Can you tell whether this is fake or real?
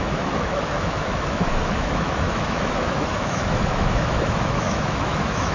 fake